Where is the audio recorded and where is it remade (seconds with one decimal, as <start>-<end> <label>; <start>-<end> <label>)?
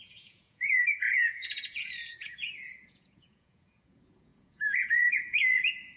0.0-6.0 remade